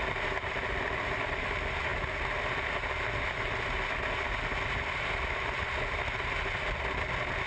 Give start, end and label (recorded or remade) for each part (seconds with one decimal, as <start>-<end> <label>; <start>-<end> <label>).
0.0-7.5 recorded